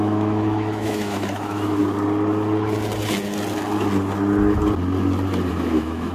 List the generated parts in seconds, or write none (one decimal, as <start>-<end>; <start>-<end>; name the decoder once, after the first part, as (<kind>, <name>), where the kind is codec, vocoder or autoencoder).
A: 0.0-1.8 (autoencoder, DAC-VAE); 5.5-6.1

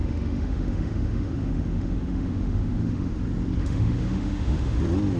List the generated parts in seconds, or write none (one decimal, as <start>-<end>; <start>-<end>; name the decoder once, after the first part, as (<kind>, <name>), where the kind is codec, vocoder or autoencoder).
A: 0.0-3.1 (autoencoder, DAC-VAE); 3.6-4.8

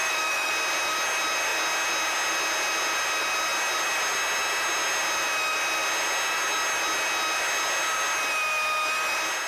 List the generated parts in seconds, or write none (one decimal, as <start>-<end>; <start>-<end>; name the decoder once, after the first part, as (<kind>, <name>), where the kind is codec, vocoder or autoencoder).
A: 0.0-0.5 (autoencoder, DAC-VAE)

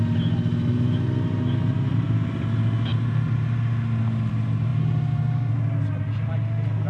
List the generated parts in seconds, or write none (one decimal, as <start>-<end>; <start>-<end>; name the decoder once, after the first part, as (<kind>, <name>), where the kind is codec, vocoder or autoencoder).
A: none